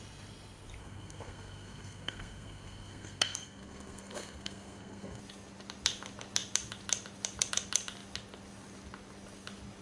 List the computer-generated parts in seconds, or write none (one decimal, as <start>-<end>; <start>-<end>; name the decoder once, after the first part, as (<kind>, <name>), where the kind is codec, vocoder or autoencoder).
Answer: 0.8-5.2 (codec, SNAC)